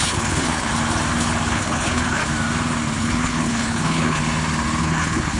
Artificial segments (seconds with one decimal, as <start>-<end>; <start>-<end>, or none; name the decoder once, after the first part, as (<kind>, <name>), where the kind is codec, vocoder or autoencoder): 0.0-0.7 (codec, HILCodec); 1.5-2.2; 3.0-4.2; 4.8-5.4